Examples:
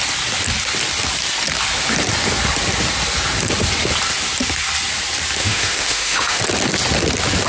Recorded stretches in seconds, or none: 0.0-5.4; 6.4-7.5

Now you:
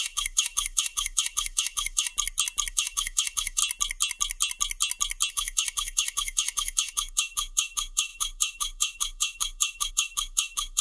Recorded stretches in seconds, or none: 2.1-2.7; 3.6-5.3